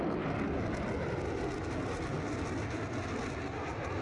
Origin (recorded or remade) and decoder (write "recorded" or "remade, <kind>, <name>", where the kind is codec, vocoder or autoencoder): recorded